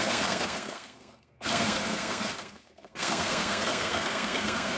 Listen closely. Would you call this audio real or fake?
fake